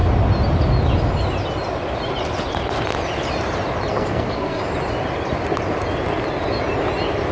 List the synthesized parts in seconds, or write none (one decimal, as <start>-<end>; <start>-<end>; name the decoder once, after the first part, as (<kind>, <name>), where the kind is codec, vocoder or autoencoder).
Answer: 3.9-4.6 (codec, SNAC)